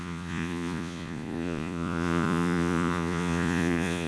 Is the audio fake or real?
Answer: fake